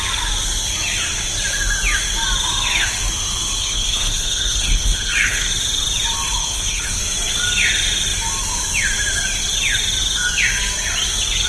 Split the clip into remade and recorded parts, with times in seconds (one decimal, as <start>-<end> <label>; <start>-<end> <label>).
0.0-3.6 recorded; 3.6-5.5 remade; 5.5-6.4 recorded; 6.4-7.0 remade; 7.0-11.5 recorded